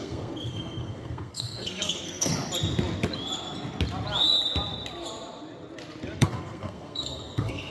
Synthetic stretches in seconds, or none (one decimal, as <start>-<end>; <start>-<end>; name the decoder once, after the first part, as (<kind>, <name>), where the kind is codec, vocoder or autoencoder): 0.0-2.3 (codec, SNAC); 6.2-7.7